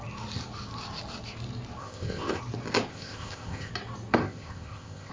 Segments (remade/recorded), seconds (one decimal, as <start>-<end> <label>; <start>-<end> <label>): 0.0-1.8 recorded; 1.8-2.4 remade; 2.4-2.9 recorded; 2.9-3.7 remade; 3.7-4.2 recorded; 4.2-5.1 remade